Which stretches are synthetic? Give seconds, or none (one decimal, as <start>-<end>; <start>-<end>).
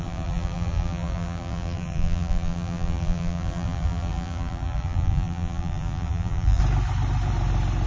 0.0-6.6